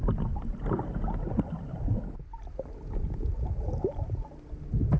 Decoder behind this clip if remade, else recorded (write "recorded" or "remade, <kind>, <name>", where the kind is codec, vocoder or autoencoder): recorded